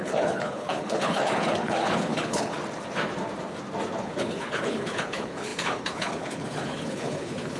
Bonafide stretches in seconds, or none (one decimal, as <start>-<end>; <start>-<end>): 2.6-4.0